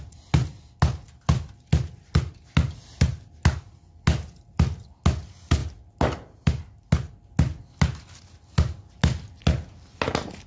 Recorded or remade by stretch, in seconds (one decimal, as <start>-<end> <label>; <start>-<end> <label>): 0.0-10.5 recorded